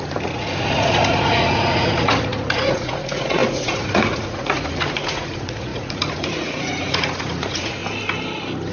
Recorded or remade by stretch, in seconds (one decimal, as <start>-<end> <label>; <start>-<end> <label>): 0.0-7.8 remade; 7.8-8.7 recorded